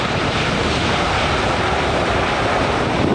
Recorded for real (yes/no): no